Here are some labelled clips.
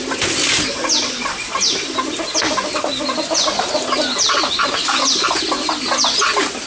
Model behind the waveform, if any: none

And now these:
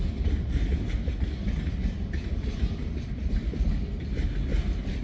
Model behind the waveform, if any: none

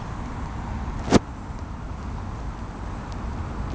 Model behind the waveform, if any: none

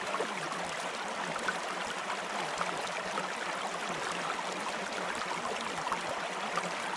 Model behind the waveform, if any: none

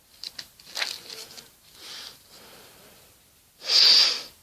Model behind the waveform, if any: none